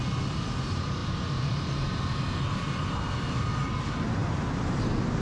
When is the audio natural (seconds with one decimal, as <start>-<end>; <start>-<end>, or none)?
0.0-5.2